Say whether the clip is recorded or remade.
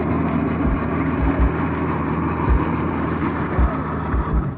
remade